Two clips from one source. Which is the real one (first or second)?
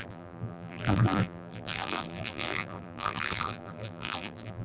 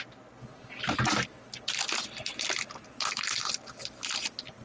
second